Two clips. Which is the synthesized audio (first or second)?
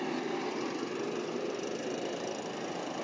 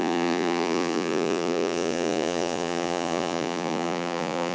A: second